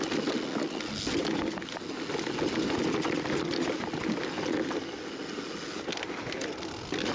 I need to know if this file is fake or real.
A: real